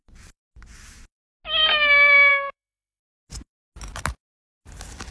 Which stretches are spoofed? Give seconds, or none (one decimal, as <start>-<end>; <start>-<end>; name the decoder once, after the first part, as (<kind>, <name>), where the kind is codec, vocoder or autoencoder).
2.3-3.0 (autoencoder, DAC-VAE)